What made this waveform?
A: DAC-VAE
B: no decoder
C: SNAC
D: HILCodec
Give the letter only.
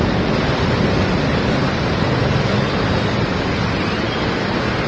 B